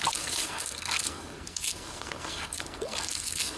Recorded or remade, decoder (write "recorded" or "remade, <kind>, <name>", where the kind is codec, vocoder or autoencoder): remade, codec, SNAC